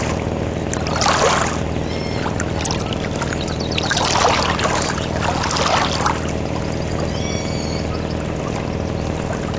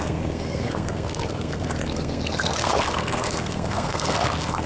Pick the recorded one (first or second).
first